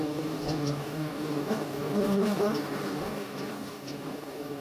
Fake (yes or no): yes